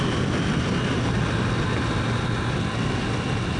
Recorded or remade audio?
recorded